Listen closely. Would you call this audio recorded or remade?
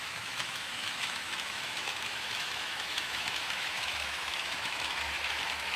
remade